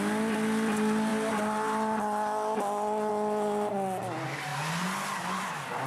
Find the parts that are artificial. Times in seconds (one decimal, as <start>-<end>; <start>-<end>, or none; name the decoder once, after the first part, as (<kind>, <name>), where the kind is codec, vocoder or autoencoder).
none